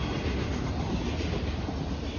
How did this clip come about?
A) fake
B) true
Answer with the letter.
B